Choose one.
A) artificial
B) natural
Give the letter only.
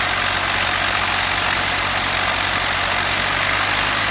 B